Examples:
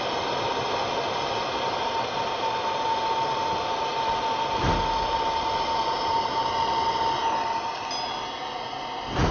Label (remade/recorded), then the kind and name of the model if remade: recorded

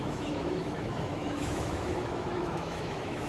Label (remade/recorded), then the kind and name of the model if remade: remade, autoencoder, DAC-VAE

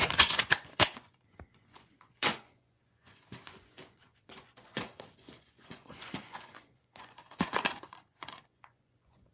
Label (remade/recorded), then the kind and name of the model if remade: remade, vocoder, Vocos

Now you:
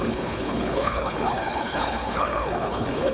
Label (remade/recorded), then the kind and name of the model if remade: remade, codec, HILCodec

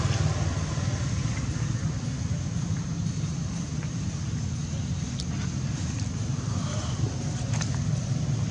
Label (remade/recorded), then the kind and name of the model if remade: recorded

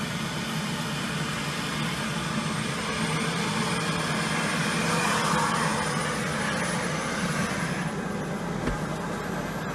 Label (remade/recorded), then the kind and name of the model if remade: recorded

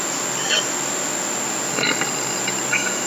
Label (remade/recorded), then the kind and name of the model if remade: recorded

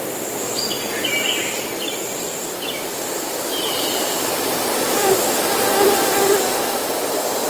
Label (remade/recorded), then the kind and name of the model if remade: remade, vocoder, BigVGAN v2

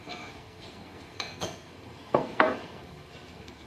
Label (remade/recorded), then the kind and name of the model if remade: remade, codec, SNAC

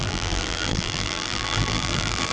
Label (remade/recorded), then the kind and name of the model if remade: remade, vocoder, BigVGAN v2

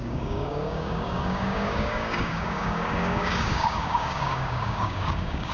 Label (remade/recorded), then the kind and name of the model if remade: remade, codec, DAC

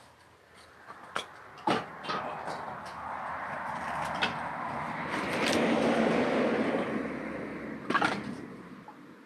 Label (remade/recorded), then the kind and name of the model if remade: recorded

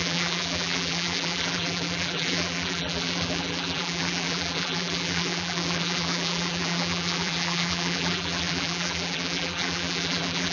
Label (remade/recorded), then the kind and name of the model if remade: remade, vocoder, BigVGAN v2